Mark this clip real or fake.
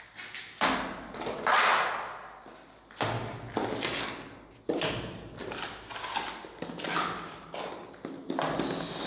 real